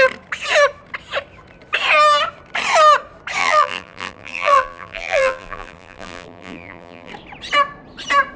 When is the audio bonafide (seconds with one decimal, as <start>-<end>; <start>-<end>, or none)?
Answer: 0.0-3.4; 7.1-8.4